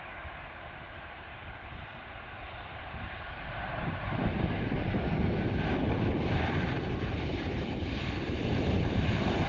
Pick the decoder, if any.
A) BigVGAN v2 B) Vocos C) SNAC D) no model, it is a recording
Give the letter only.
A